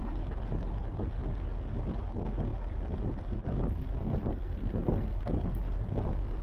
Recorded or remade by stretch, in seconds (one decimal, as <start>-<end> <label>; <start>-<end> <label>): 0.0-4.0 recorded; 4.0-5.2 remade; 5.2-6.4 recorded